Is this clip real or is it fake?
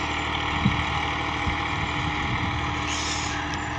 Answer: real